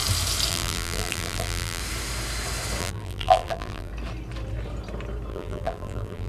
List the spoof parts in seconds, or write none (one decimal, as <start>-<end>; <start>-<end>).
0.5-1.8; 2.8-3.9; 5.3-6.3